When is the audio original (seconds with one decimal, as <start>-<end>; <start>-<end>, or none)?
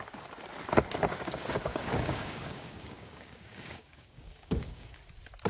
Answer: 0.0-1.7; 5.0-5.5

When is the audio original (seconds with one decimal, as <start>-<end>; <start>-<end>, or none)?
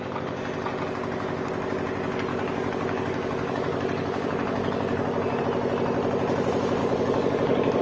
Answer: 0.0-2.3; 5.4-6.8